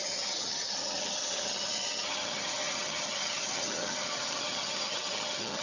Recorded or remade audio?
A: remade